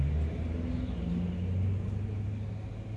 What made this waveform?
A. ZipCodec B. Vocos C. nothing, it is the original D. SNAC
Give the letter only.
C